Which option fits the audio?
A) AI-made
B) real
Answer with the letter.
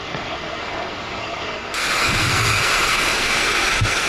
A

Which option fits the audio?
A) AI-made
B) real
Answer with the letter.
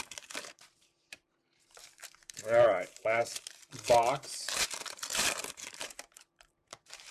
A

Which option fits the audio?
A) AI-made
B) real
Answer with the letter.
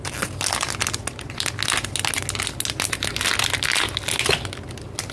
B